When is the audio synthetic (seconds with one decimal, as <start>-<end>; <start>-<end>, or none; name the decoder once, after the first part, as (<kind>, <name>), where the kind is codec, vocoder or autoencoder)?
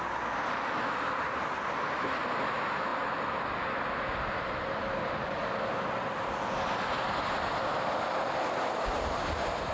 none